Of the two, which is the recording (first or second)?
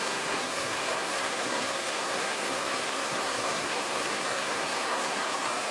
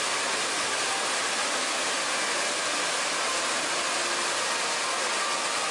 second